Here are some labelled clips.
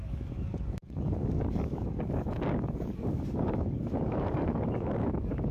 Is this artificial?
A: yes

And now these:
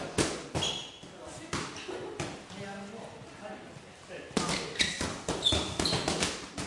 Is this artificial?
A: no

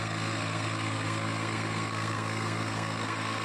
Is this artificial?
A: yes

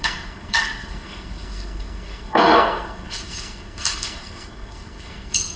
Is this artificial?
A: yes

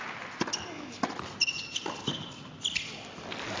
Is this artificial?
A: no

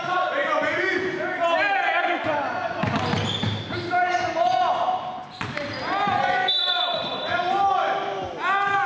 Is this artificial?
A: no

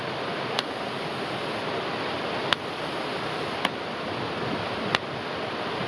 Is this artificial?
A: no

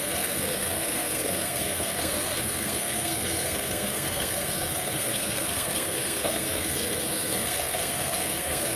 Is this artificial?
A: yes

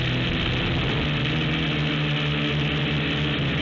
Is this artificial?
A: no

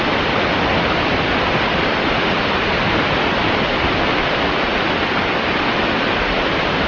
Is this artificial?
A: no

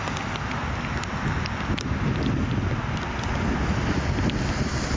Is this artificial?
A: no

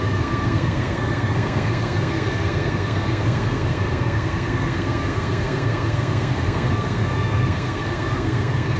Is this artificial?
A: yes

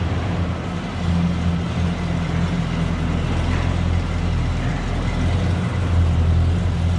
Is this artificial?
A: no